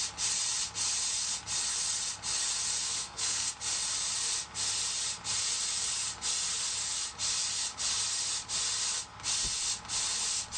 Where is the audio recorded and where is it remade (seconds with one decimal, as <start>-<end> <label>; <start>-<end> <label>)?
0.0-2.8 recorded; 2.8-3.5 remade; 3.5-10.6 recorded